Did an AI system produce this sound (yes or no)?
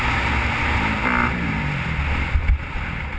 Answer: no